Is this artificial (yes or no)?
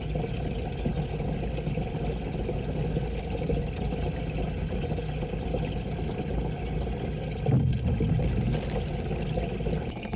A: no